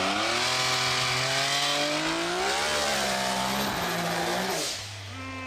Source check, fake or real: real